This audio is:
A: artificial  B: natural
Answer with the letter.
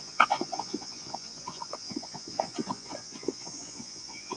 A